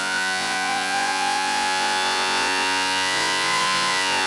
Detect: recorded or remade remade